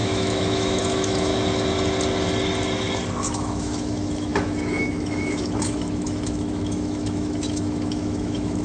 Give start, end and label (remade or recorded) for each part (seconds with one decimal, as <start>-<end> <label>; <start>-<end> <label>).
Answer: 0.0-1.3 remade; 1.3-3.2 recorded; 3.2-8.6 remade